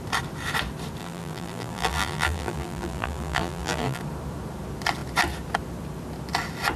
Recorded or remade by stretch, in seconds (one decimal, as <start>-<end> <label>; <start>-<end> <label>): 0.0-1.0 recorded; 1.0-4.0 remade; 4.0-6.8 recorded

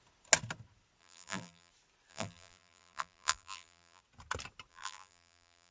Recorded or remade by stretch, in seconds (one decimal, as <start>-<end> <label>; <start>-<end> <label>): 0.0-1.0 recorded; 1.0-1.7 remade; 1.7-2.1 recorded; 2.1-4.0 remade; 4.0-4.7 recorded; 4.7-5.7 remade

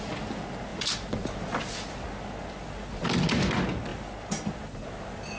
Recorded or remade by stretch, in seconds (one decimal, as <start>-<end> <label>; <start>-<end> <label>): 0.0-0.7 recorded; 0.7-1.6 remade; 1.6-3.9 recorded; 3.9-4.6 remade; 4.6-5.4 recorded

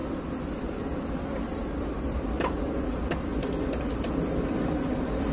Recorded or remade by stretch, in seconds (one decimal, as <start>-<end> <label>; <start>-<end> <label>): 0.0-3.3 remade; 3.3-4.1 recorded; 4.1-5.3 remade

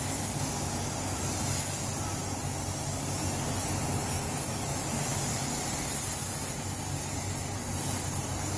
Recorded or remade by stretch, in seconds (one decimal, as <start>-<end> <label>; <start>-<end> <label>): 0.0-8.6 recorded

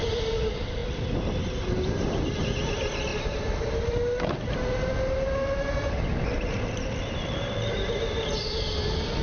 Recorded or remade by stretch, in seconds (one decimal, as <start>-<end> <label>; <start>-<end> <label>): 0.0-3.1 recorded; 3.1-4.5 remade; 4.5-9.2 recorded